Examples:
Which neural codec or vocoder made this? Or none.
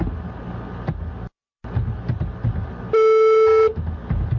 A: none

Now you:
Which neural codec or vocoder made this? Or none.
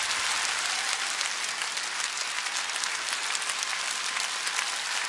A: none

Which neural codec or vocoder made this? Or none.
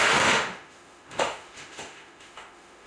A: autoencoder, DAC-VAE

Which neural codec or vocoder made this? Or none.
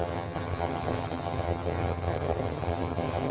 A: vocoder, HiFi-GAN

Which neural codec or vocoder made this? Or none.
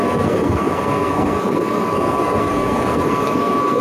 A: codec, SNAC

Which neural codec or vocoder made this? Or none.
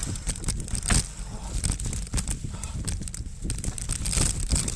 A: none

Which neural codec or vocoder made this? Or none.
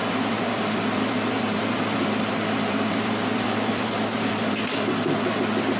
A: vocoder, BigVGAN v2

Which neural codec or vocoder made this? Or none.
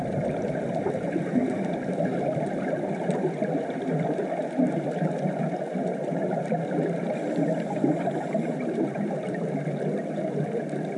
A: vocoder, BigVGAN v2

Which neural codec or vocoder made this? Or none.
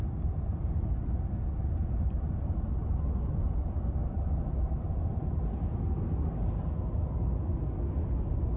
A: none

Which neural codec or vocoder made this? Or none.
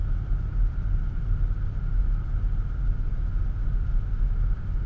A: none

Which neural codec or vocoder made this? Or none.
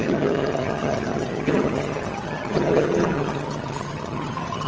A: vocoder, HiFi-GAN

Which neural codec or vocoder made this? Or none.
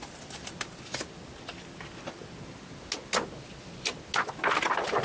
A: none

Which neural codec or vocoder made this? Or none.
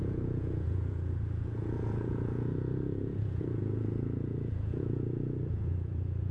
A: vocoder, Vocos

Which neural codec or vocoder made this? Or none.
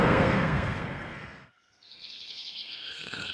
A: codec, SNAC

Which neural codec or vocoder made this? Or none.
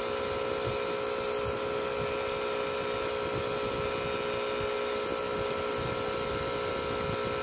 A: none